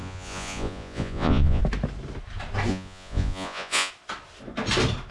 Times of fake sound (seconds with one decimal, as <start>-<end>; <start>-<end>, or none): 0.0-1.6; 2.7-3.9